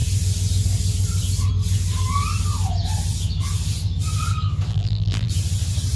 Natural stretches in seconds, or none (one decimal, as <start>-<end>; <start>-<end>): 0.0-4.7; 5.3-6.0